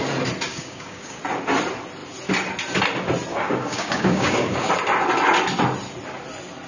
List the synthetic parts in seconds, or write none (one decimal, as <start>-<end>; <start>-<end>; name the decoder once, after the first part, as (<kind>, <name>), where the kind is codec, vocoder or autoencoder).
0.5-1.2 (codec, DAC); 3.3-4.7